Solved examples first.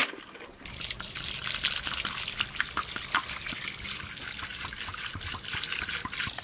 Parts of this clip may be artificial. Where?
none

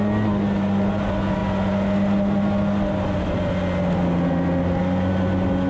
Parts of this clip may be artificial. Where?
none